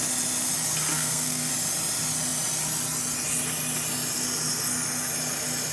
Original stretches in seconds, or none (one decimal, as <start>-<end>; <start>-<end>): 0.0-0.9; 1.5-5.7